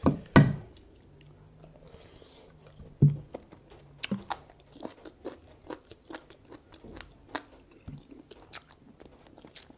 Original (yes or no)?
yes